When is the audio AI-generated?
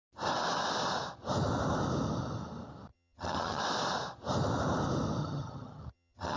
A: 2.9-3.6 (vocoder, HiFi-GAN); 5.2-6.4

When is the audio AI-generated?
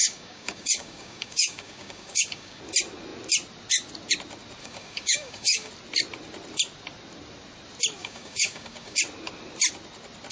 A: 0.0-2.6 (codec, DAC); 4.6-5.7; 8.0-9.0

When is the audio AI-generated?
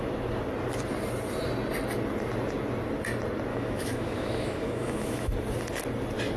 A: 3.5-5.3 (autoencoder, DAC-VAE)